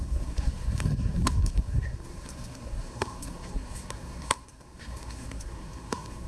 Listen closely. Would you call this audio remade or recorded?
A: remade